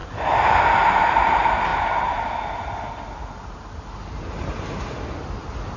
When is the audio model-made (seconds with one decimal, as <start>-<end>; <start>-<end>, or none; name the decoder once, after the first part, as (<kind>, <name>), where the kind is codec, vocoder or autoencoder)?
none